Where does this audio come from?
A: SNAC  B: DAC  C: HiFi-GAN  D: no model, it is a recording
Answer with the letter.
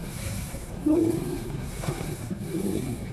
A